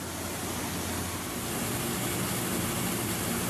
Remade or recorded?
recorded